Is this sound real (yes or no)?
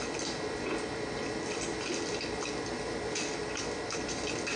yes